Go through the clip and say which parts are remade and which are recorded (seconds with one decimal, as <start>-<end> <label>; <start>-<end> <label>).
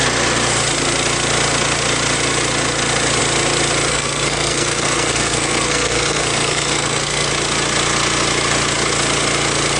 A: 0.0-3.9 recorded; 3.9-7.3 remade; 7.3-9.8 recorded